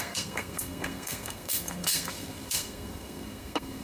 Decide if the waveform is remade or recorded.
remade